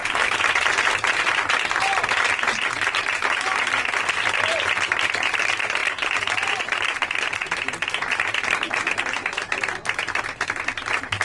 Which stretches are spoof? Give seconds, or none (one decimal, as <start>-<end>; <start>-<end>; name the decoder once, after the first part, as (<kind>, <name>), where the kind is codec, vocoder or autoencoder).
5.8-6.6 (vocoder, BigVGAN v2)

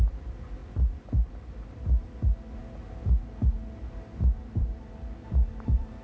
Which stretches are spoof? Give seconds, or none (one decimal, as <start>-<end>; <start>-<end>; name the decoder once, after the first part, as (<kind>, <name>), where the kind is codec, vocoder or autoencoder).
0.0-0.6 (vocoder, BigVGAN v2); 1.3-2.6; 4.4-6.0

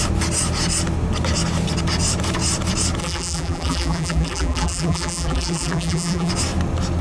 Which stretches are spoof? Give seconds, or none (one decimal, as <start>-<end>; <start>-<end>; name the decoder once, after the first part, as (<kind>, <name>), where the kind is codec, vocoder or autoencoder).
3.0-6.3 (vocoder, BigVGAN v2)

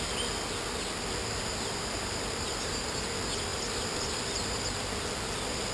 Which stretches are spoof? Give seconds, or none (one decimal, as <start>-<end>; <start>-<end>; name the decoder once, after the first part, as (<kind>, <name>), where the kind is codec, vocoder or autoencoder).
1.2-2.5 (vocoder, BigVGAN v2); 3.5-4.6

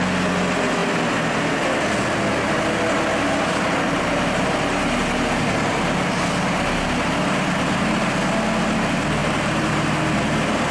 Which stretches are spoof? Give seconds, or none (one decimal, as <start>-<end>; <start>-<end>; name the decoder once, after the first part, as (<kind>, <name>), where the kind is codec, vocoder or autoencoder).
9.2-10.0 (vocoder, BigVGAN v2)